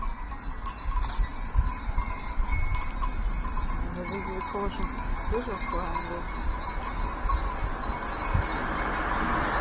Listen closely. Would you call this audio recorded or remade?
recorded